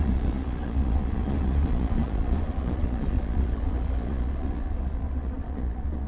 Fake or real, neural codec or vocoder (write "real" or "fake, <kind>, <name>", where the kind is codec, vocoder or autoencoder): fake, vocoder, Vocos